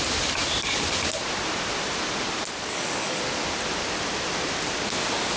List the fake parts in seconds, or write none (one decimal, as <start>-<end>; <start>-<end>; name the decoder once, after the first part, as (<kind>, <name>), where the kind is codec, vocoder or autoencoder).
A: 2.7-3.2 (codec, DAC)